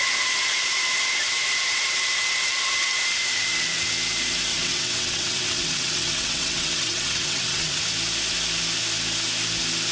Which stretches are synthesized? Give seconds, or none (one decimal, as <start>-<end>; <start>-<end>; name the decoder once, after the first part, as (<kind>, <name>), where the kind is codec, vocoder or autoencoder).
4.5-7.8 (vocoder, WaveNeXt)